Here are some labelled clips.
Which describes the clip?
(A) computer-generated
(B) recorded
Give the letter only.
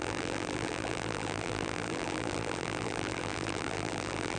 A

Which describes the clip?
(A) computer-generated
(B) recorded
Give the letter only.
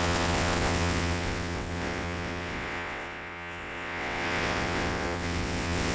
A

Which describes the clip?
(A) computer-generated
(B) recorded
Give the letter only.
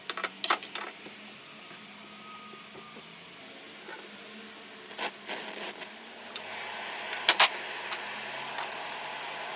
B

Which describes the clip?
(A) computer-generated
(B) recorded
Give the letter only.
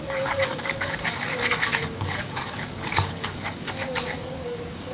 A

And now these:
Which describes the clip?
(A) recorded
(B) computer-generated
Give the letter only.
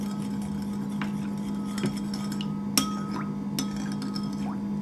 A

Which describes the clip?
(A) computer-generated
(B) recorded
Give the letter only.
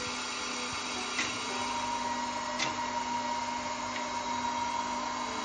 B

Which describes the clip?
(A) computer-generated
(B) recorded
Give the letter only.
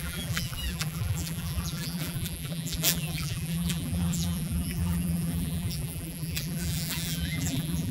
A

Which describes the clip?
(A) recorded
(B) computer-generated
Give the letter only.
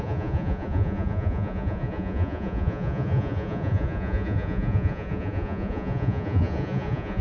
B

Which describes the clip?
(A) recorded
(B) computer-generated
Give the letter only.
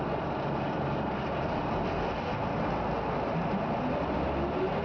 A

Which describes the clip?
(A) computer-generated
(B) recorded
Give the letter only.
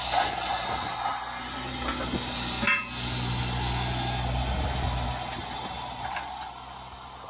B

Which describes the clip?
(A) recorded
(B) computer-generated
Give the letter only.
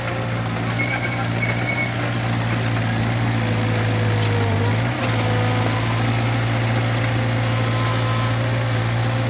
A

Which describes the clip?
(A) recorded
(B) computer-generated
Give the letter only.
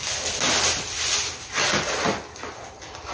A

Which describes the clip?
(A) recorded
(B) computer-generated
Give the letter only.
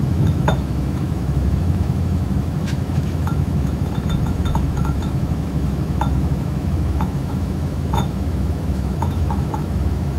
B